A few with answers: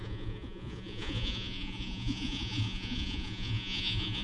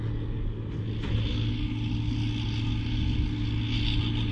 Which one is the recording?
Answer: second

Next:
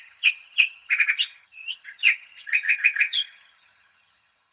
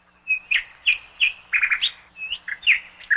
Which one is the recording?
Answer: second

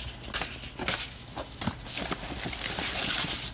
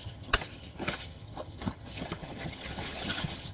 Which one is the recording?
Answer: first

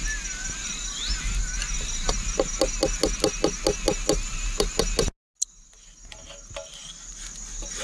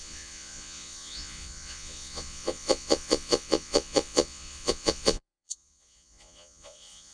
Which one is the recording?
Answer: first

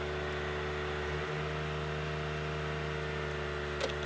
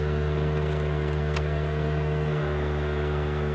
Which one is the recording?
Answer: first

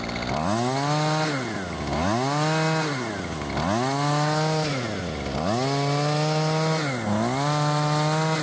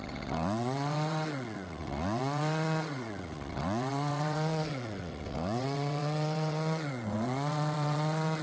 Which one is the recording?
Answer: first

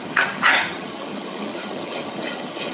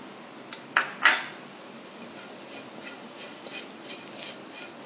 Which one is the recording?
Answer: second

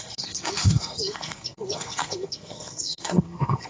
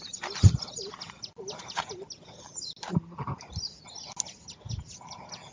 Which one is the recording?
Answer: second